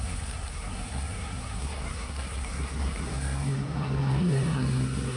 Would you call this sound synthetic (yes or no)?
yes